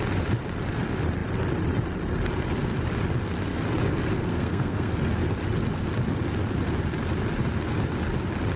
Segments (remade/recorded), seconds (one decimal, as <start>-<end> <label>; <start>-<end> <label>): 0.0-4.3 recorded; 4.3-4.9 remade; 4.9-8.6 recorded